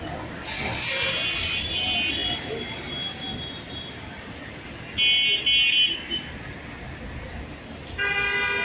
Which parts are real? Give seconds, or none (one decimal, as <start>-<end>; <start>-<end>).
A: 0.0-8.6